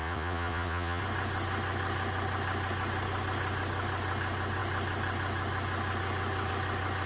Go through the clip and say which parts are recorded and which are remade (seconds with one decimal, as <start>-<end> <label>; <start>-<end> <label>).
0.0-1.0 remade; 1.0-7.1 recorded